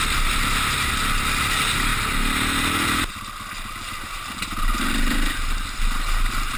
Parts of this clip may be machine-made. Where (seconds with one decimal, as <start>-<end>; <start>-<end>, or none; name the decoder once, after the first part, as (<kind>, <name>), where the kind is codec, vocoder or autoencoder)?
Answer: none